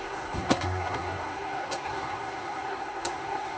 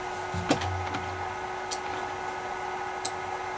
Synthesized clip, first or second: first